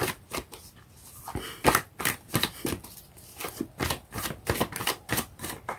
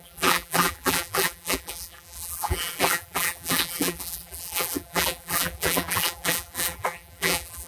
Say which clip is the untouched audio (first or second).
first